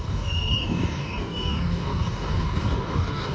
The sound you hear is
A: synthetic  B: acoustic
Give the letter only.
A